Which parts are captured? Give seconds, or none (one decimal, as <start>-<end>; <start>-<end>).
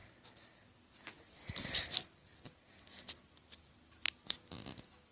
0.0-5.1